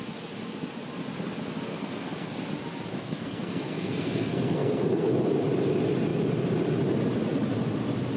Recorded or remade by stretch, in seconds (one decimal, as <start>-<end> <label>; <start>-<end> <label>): 0.0-1.7 recorded; 1.7-2.5 remade; 2.5-2.9 recorded; 2.9-5.1 remade; 5.1-8.2 recorded